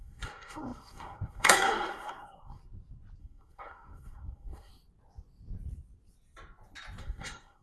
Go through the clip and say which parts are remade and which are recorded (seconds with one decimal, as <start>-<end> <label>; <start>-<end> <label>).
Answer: 0.0-2.6 remade; 2.6-3.2 recorded; 3.2-4.7 remade; 4.7-7.0 recorded; 7.0-7.6 remade